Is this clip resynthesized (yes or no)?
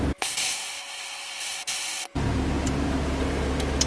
no